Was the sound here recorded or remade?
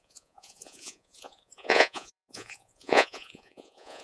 remade